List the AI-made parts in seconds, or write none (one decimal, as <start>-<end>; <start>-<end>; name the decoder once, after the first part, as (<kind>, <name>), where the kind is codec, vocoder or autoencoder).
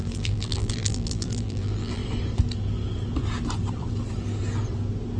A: 0.0-2.0 (vocoder, BigVGAN v2)